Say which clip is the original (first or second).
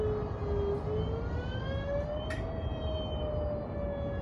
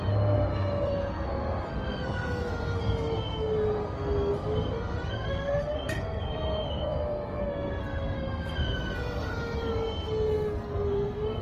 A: first